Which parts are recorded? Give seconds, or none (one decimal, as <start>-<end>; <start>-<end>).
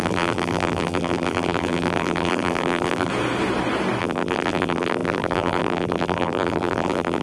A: 3.1-4.0